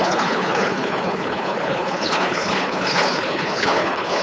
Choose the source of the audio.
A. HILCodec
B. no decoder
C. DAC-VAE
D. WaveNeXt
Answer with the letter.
A